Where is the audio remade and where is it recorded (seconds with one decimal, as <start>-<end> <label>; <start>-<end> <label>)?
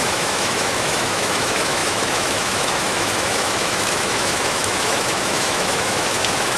0.0-6.6 remade